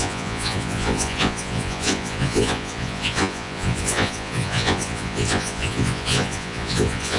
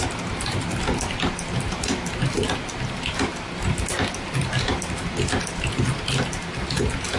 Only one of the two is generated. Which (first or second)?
first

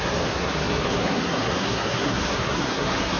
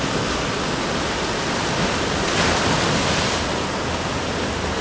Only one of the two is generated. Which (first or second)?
first